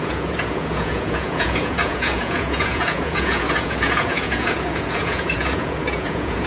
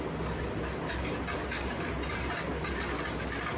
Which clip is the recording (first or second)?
second